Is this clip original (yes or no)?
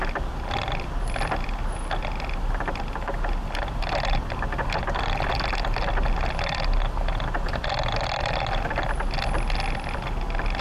yes